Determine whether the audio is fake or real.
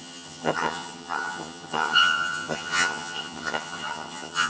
fake